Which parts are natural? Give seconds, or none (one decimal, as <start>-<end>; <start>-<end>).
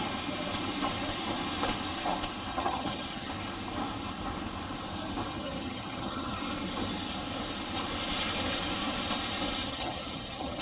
0.0-2.5; 3.3-5.3; 6.4-9.6